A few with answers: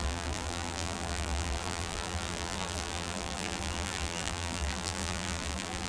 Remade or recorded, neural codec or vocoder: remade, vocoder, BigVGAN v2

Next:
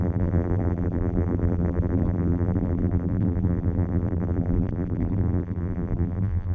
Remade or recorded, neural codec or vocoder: remade, vocoder, BigVGAN v2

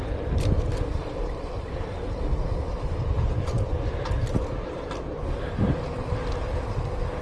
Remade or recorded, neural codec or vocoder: recorded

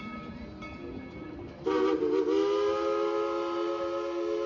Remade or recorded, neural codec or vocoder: recorded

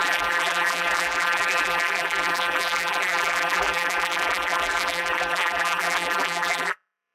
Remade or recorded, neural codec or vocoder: remade, vocoder, BigVGAN v2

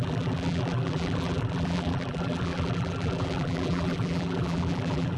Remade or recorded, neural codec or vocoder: remade, vocoder, BigVGAN v2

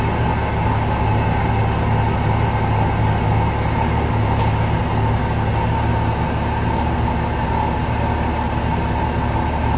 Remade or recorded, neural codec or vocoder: recorded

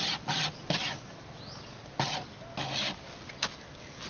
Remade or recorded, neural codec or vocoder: recorded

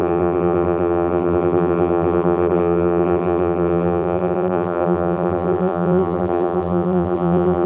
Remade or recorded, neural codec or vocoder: remade, vocoder, BigVGAN v2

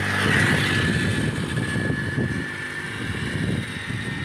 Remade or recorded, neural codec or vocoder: recorded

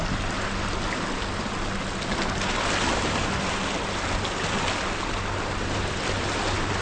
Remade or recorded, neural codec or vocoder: recorded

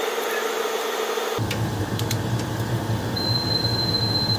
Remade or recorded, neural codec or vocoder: remade, vocoder, BigVGAN v2